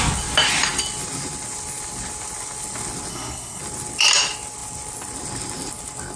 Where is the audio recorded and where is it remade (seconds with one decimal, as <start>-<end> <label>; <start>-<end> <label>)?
0.0-3.1 recorded; 3.1-3.6 remade; 3.6-6.2 recorded